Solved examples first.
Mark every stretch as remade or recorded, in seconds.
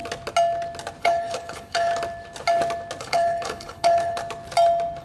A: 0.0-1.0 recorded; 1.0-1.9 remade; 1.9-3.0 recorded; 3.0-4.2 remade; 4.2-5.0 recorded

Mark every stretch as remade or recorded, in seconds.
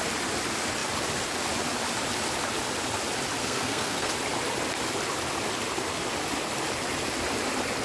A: 0.0-3.4 recorded; 3.4-4.1 remade; 4.1-7.8 recorded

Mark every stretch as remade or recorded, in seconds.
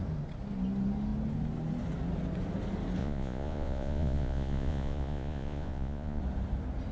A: 0.0-3.0 recorded; 3.0-6.2 remade; 6.2-6.9 recorded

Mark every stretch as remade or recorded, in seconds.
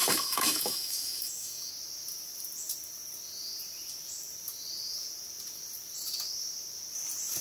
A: 0.0-1.7 remade; 1.7-7.4 recorded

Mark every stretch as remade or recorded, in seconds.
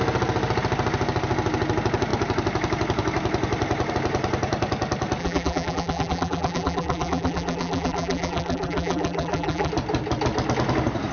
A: 0.0-5.2 recorded; 5.2-9.7 remade; 9.7-11.1 recorded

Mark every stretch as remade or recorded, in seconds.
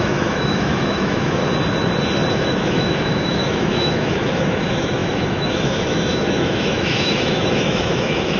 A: 0.0-1.4 remade; 1.4-2.3 recorded; 2.3-8.4 remade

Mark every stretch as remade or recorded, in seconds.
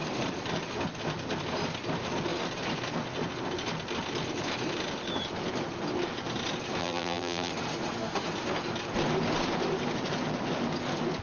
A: 0.0-6.8 recorded; 6.8-7.5 remade; 7.5-11.2 recorded